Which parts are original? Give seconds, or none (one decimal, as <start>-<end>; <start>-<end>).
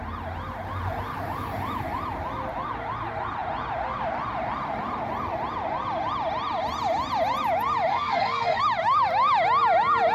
0.0-7.9; 8.6-10.1